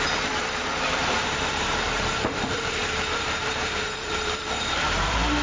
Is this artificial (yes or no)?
yes